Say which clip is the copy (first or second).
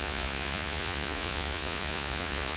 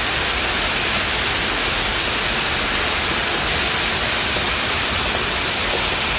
first